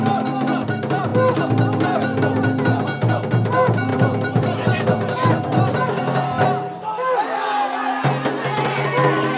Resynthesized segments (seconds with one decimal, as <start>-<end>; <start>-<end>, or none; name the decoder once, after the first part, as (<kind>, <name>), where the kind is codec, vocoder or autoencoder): 3.9-6.0 (vocoder, BigVGAN v2)